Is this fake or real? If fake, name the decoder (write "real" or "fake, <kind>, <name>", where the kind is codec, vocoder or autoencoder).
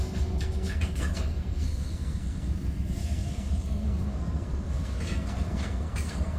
fake, codec, SNAC